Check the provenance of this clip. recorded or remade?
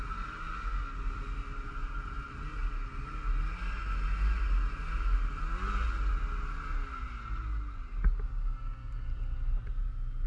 recorded